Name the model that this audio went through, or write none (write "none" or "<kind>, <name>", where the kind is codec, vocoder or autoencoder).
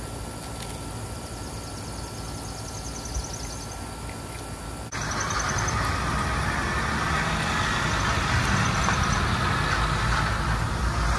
none